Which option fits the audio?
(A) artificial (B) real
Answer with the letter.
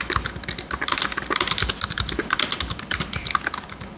B